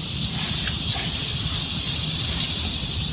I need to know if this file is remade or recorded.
recorded